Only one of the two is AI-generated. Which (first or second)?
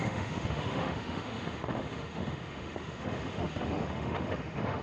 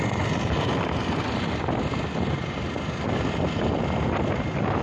first